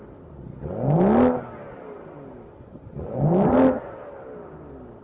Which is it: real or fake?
real